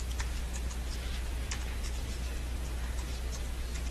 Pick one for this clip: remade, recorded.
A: recorded